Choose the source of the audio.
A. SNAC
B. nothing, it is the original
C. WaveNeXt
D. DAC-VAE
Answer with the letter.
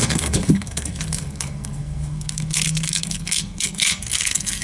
A